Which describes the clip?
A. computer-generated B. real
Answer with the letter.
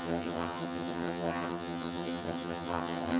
A